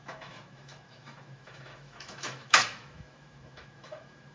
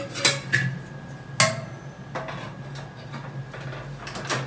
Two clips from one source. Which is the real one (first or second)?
second